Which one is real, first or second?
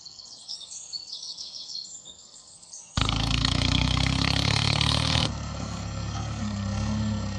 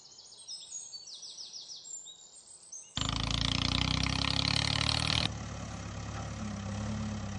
second